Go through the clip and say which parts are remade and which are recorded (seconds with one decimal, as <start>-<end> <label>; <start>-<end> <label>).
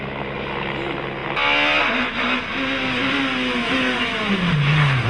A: 0.0-5.1 recorded